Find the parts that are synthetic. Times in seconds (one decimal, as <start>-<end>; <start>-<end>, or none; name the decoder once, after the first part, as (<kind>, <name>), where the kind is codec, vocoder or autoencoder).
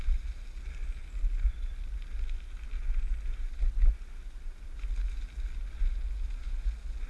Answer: none